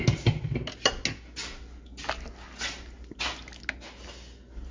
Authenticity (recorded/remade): recorded